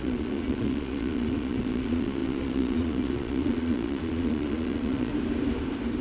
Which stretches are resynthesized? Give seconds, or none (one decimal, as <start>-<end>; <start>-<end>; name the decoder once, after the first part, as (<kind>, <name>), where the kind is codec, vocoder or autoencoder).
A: 0.0-5.1 (vocoder, Vocos)